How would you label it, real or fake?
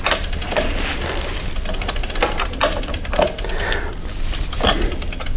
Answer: real